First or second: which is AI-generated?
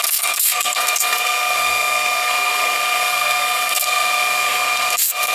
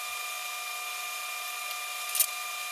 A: first